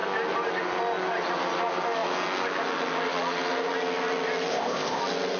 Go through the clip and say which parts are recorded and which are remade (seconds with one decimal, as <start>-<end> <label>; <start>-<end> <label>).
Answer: 0.0-4.5 recorded; 4.5-5.0 remade; 5.0-5.4 recorded